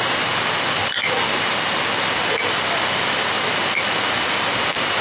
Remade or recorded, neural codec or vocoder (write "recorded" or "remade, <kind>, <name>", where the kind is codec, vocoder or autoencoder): recorded